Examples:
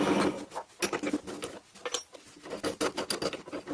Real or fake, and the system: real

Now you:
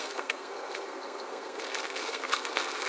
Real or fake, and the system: fake, codec, SNAC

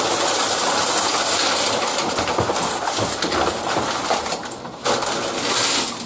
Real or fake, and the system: real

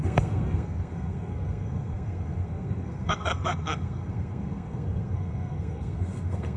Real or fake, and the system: fake, codec, SNAC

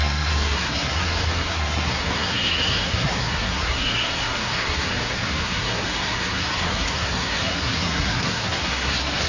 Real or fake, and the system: fake, codec, SNAC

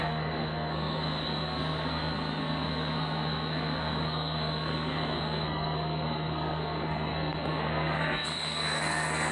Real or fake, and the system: fake, codec, SNAC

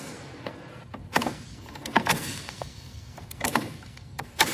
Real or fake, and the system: fake, codec, SNAC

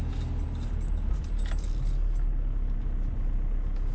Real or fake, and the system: real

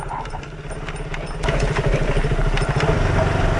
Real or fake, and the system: real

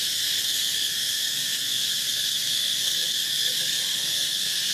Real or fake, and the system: fake, codec, SNAC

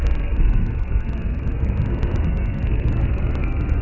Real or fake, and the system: fake, codec, SNAC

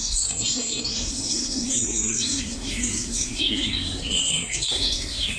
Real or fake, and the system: fake, codec, SNAC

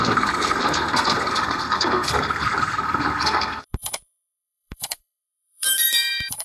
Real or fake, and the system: fake, codec, SNAC